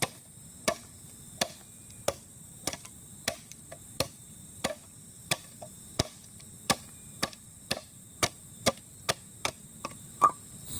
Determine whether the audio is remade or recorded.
remade